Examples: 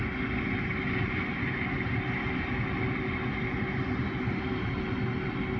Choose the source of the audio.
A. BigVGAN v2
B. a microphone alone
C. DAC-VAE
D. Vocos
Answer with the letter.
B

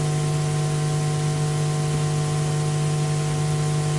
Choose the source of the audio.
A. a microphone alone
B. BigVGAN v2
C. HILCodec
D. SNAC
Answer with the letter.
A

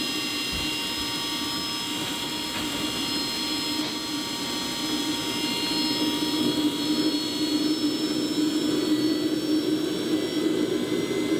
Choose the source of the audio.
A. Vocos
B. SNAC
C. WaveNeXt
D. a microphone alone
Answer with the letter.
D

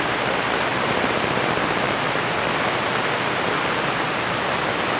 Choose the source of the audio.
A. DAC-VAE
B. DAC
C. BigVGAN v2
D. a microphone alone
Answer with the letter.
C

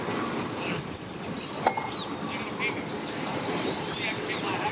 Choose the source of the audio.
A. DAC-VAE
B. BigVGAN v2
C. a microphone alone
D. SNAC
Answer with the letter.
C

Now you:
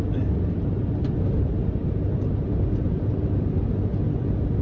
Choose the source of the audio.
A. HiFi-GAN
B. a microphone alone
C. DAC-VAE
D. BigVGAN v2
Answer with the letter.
B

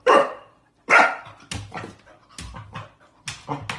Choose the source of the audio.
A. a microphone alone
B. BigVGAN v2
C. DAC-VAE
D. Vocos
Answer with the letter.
A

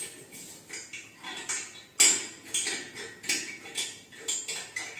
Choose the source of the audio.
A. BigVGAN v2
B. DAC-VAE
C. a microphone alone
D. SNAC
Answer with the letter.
C